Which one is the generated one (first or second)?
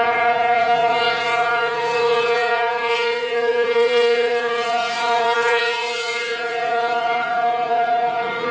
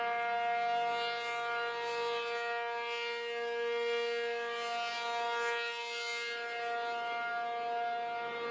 first